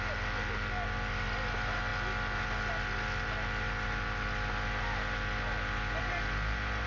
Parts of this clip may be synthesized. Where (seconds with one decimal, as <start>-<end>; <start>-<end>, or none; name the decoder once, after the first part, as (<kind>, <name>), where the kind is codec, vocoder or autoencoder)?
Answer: none